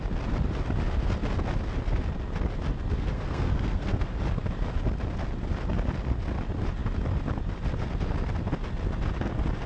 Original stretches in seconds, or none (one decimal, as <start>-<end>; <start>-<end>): 0.0-2.9; 4.2-9.7